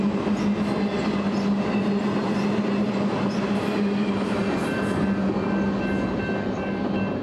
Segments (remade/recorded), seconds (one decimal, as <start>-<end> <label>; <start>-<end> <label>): 0.0-7.2 recorded